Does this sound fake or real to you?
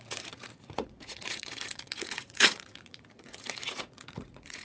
fake